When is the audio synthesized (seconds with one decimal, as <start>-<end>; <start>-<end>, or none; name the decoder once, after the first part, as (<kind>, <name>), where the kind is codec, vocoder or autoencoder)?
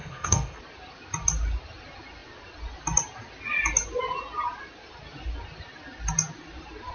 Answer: 0.0-0.6 (codec, SNAC)